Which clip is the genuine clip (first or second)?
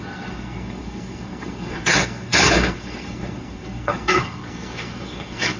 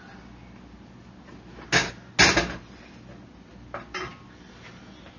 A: second